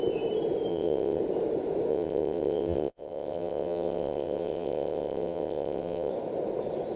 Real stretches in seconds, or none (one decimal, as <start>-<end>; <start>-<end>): 0.0-0.7; 1.2-1.9; 6.1-7.0